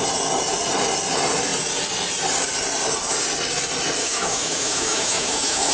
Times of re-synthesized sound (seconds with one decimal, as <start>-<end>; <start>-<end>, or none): 4.0-5.7